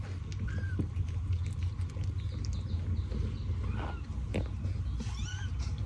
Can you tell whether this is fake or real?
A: real